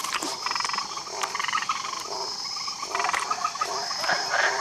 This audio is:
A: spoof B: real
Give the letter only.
B